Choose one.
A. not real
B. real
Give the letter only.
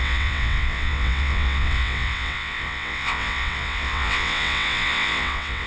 A